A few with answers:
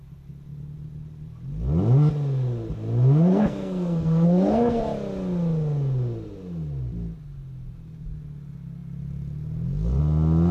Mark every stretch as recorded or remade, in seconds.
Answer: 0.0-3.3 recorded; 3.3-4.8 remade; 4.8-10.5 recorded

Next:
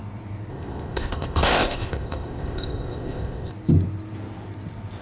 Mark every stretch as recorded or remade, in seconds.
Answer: 0.0-0.5 recorded; 0.5-3.5 remade; 3.5-5.0 recorded